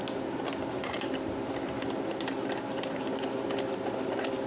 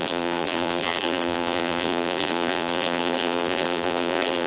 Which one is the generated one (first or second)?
second